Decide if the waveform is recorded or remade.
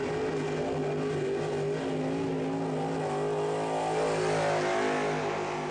recorded